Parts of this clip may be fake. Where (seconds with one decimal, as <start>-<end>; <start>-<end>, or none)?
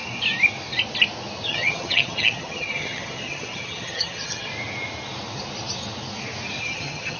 1.5-4.5; 6.6-7.2